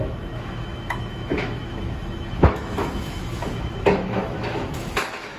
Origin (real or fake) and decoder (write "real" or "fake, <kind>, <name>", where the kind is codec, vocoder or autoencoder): fake, autoencoder, DAC-VAE